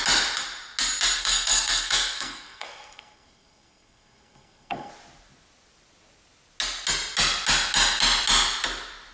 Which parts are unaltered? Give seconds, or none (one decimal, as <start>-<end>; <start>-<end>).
0.0-1.2; 4.9-9.1